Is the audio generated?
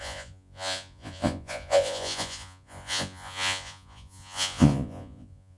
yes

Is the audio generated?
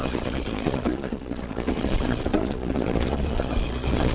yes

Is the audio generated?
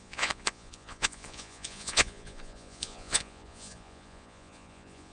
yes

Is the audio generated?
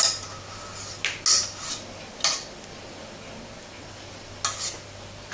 no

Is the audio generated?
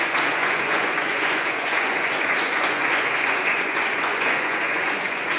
yes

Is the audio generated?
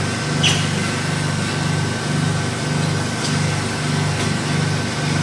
no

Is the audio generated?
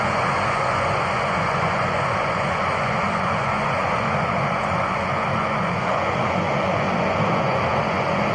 yes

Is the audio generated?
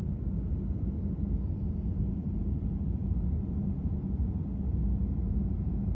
no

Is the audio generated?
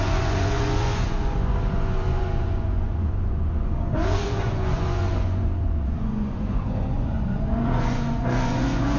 yes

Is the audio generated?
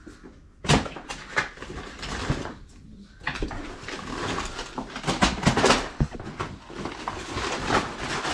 no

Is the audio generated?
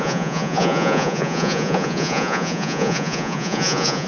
yes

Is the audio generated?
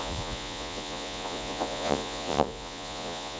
yes